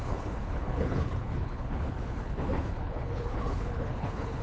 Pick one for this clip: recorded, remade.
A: remade